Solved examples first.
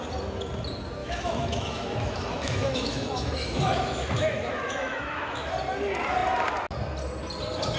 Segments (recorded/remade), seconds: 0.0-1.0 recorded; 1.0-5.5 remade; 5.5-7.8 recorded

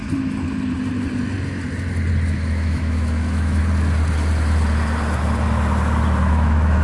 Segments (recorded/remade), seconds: 0.0-2.5 recorded; 2.5-3.6 remade; 3.6-6.3 recorded; 6.3-6.8 remade

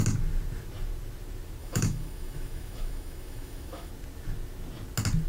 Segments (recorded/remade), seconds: 0.0-1.6 recorded; 1.6-3.9 remade; 3.9-5.3 recorded

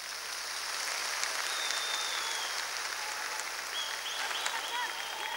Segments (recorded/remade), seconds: 0.0-5.4 recorded

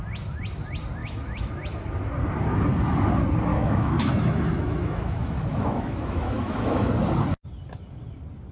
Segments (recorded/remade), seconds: 0.0-1.0 recorded; 1.0-1.5 remade; 1.5-3.5 recorded; 3.5-6.9 remade; 6.9-8.5 recorded

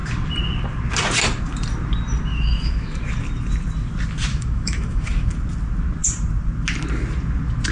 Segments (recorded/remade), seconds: 0.0-2.3 recorded; 2.3-3.0 remade; 3.0-4.3 recorded; 4.3-5.3 remade; 5.3-7.7 recorded

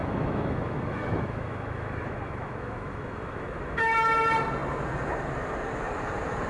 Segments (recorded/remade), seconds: 0.0-3.9 remade; 3.9-6.5 recorded

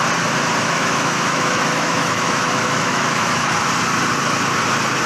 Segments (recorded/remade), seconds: 0.0-0.6 recorded; 0.6-3.7 remade; 3.7-5.1 recorded